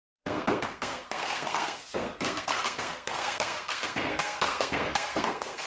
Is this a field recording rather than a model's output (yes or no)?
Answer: no